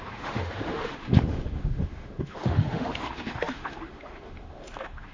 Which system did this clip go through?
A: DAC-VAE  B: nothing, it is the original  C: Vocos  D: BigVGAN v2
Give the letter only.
A